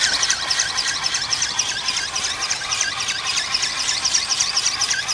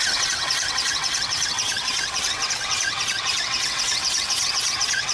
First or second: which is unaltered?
first